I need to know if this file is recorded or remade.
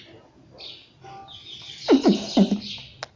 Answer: recorded